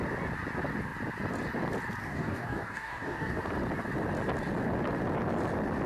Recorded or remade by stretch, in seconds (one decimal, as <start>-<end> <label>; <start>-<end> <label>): 0.0-2.0 recorded; 2.0-3.4 remade; 3.4-5.9 recorded